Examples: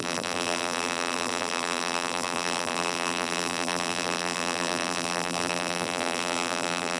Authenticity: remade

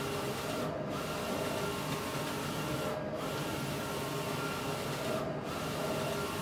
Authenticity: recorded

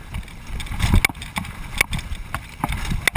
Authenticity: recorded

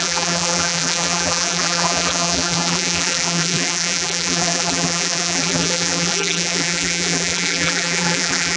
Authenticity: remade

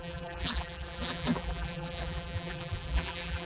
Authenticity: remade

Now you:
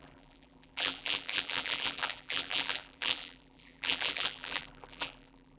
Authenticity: remade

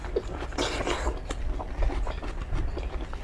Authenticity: recorded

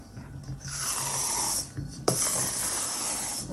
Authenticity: recorded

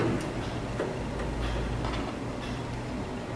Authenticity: recorded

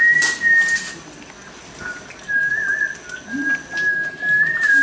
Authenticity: recorded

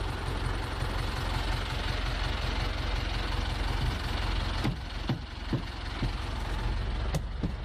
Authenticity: recorded